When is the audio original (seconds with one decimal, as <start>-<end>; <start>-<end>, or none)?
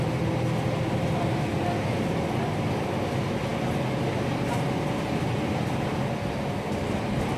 0.0-7.4